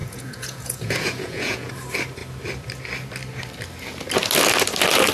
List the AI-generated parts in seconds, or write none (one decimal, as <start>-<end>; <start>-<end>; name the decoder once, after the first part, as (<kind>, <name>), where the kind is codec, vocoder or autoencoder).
0.0-1.7 (vocoder, Vocos)